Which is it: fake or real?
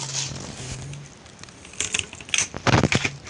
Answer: real